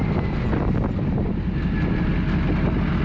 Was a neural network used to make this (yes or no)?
no